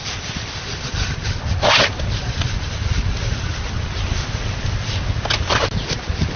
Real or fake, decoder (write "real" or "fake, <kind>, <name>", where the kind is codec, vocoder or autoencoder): real